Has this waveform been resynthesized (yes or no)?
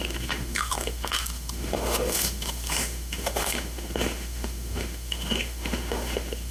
yes